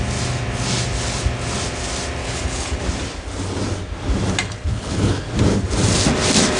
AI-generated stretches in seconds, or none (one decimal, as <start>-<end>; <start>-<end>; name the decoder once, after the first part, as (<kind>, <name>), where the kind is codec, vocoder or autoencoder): 2.2-2.8 (codec, HILCodec); 4.7-5.2